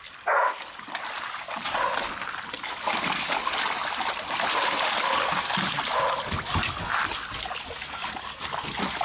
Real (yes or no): yes